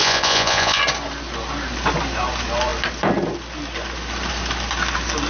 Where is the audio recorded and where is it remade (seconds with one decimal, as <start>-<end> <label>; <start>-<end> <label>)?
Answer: 0.0-0.8 remade; 0.8-5.3 recorded